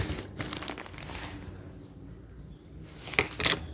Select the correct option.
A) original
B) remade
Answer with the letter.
A